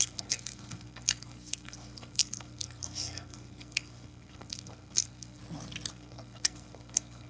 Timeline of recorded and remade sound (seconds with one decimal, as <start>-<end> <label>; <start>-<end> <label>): 0.0-5.4 remade; 5.4-5.9 recorded; 5.9-7.3 remade